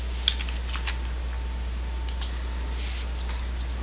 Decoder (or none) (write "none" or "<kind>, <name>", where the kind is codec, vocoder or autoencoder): none